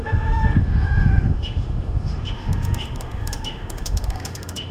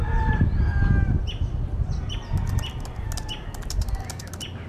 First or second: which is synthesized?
first